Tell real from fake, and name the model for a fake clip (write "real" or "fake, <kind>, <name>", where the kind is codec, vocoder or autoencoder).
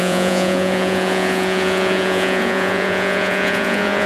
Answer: fake, vocoder, Vocos